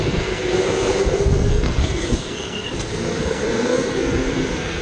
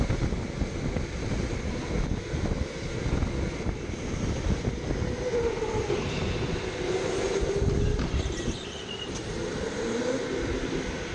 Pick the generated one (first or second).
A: first